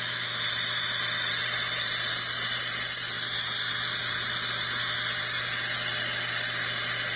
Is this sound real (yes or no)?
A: yes